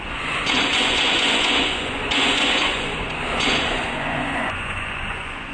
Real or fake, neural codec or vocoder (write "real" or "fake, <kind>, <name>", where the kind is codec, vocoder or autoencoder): fake, vocoder, Vocos